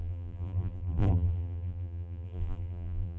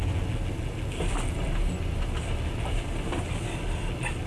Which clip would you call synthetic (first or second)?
first